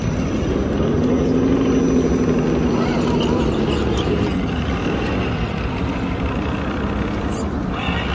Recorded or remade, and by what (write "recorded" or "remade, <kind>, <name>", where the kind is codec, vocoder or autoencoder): recorded